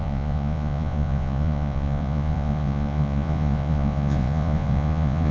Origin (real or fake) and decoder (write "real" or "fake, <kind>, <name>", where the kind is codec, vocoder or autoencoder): fake, vocoder, Vocos